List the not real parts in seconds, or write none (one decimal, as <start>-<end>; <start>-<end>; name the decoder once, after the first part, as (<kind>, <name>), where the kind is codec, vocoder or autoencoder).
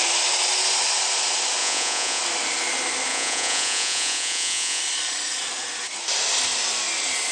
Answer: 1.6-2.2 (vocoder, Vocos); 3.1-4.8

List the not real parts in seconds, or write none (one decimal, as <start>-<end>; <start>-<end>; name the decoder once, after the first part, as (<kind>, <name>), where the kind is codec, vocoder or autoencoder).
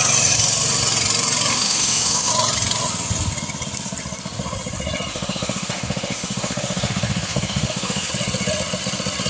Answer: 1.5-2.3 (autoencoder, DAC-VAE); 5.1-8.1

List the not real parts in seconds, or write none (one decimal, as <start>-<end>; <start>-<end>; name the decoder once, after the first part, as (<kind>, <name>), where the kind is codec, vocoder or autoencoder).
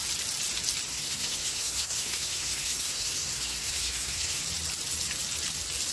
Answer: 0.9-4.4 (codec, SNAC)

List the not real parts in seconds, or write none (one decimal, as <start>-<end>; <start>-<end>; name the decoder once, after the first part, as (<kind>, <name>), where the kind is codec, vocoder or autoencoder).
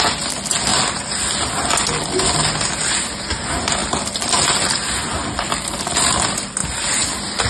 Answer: none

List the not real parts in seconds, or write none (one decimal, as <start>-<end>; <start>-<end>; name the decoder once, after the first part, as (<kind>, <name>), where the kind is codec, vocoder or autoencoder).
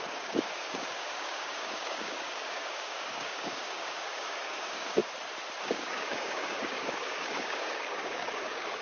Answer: 0.0-5.0 (codec, DAC); 5.6-8.8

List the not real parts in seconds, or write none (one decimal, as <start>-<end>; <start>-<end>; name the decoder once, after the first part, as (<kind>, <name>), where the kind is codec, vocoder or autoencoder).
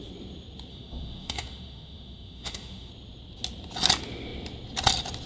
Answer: 0.7-2.9 (autoencoder, DAC-VAE)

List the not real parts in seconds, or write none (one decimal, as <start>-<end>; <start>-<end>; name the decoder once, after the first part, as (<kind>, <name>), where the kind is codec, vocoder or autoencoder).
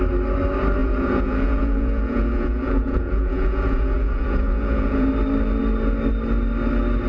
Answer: 0.8-5.1 (vocoder, Vocos)